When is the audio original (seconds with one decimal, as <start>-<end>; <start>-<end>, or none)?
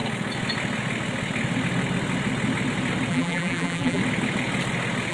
0.0-3.1; 4.0-5.1